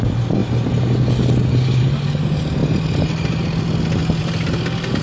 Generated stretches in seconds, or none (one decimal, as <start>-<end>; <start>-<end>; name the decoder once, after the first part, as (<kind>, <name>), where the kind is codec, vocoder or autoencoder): none